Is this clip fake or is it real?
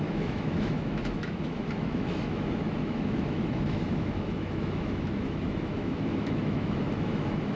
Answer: fake